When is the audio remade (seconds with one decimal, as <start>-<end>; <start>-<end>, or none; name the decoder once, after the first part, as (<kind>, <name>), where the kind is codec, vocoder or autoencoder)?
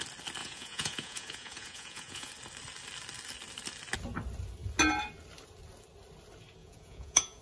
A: 0.4-2.3 (vocoder, Vocos); 6.6-7.4